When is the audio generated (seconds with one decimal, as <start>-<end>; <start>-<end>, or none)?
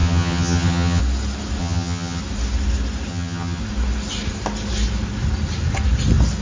0.0-1.0; 1.6-2.2; 3.1-3.6